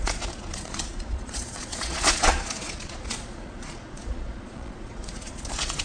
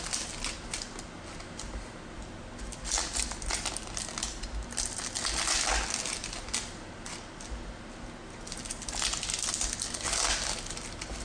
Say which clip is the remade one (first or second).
first